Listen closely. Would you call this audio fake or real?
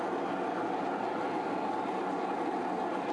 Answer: real